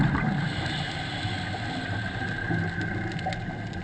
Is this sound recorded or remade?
recorded